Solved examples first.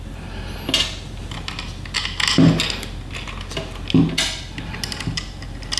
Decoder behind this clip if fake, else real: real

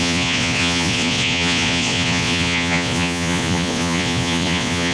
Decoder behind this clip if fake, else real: fake, vocoder, Vocos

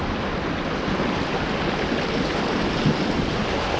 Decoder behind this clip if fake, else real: real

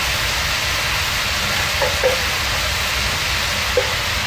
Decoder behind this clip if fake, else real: real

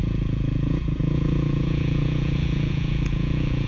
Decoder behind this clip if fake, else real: fake, vocoder, Vocos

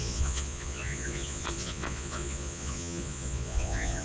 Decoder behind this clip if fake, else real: fake, vocoder, Vocos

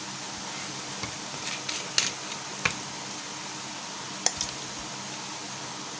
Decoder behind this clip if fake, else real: real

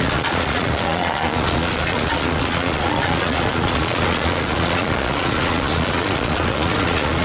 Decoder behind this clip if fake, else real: fake, vocoder, Vocos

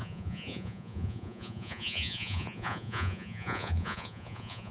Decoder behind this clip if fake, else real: fake, vocoder, Vocos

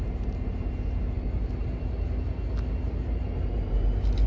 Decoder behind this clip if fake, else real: real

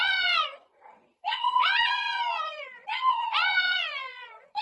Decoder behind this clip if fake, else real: fake, vocoder, Vocos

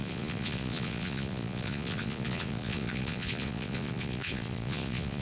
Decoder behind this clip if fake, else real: fake, vocoder, Vocos